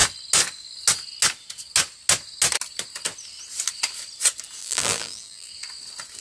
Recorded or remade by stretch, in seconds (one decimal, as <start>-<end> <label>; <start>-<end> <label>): 0.0-4.6 recorded; 4.6-5.5 remade; 5.5-6.2 recorded

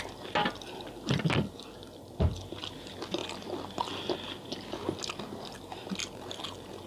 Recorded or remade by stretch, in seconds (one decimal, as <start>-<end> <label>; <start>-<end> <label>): 0.0-6.9 recorded

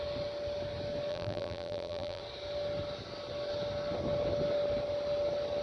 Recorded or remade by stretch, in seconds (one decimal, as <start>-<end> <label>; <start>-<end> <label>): 0.0-1.1 recorded; 1.1-2.2 remade; 2.2-5.6 recorded

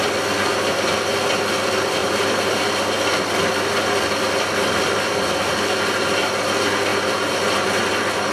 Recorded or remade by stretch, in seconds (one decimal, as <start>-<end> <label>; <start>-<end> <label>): 0.0-2.0 recorded; 2.0-2.6 remade; 2.6-6.9 recorded; 6.9-7.8 remade; 7.8-8.3 recorded

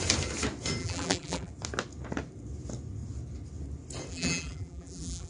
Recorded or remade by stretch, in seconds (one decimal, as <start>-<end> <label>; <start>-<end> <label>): 0.0-0.8 recorded; 0.8-1.5 remade; 1.5-4.1 recorded; 4.1-5.3 remade

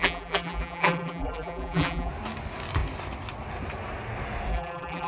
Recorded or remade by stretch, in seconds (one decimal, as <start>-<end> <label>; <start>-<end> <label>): 0.0-2.1 remade; 2.1-4.5 recorded; 4.5-5.1 remade

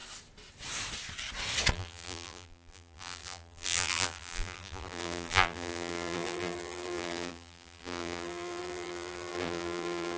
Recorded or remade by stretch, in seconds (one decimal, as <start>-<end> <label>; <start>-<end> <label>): 0.0-1.7 recorded; 1.7-10.2 remade

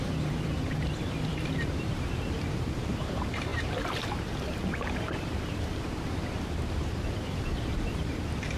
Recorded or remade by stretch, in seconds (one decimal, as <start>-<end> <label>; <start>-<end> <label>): 0.0-8.6 remade